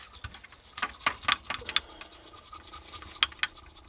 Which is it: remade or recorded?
recorded